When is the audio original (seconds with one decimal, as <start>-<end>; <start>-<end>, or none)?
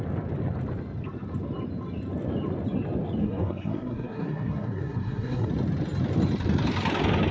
0.0-3.2; 5.5-7.3